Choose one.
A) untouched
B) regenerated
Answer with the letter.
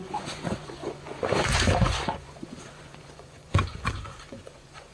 B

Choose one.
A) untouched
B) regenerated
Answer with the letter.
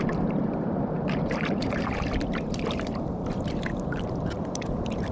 B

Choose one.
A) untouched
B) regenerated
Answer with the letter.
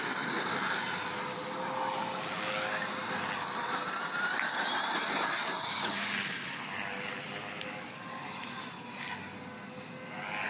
A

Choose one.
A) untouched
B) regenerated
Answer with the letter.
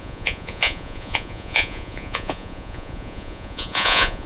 B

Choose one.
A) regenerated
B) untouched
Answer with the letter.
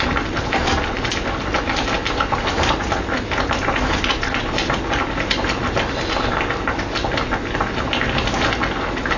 B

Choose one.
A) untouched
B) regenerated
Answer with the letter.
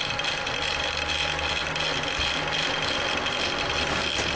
A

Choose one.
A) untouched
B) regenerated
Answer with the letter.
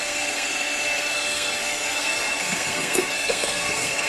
B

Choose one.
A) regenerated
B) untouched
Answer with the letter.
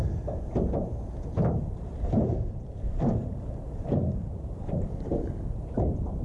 A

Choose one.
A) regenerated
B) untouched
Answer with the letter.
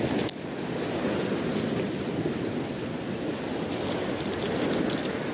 B